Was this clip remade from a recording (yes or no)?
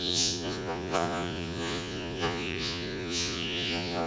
yes